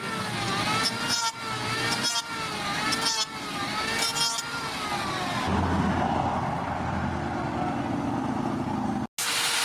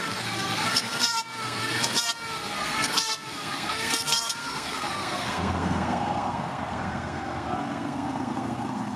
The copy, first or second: second